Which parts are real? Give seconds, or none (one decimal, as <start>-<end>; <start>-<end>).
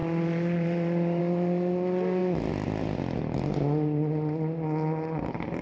1.2-2.2